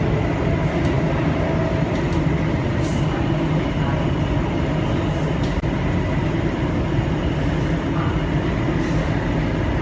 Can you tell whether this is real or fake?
real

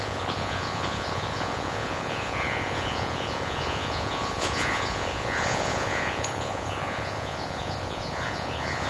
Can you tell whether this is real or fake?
fake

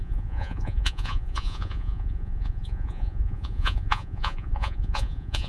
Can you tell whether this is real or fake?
fake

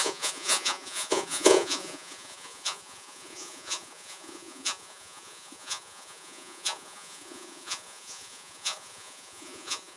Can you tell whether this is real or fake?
fake